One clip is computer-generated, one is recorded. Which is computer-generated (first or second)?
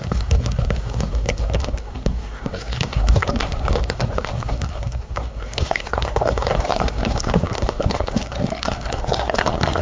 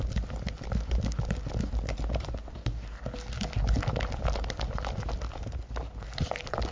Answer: first